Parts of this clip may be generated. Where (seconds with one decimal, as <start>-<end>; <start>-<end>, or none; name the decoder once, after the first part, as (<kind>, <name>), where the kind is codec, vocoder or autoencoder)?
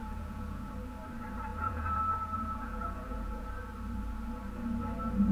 0.0-0.7 (vocoder, Vocos); 1.5-3.5